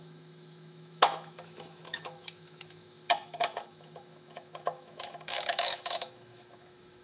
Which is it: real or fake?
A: fake